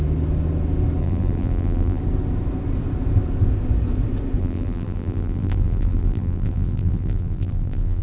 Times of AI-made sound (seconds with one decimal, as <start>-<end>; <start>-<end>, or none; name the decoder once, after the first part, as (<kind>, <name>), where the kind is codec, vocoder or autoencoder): 1.0-2.0 (vocoder, BigVGAN v2); 4.4-8.0